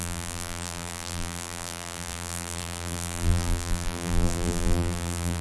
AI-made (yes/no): yes